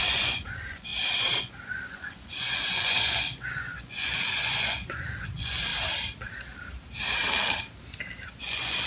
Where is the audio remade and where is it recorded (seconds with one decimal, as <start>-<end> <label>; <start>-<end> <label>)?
0.0-0.9 remade; 0.9-1.4 recorded; 1.4-5.7 remade; 5.7-8.4 recorded; 8.4-8.9 remade